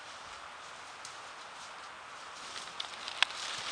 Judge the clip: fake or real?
real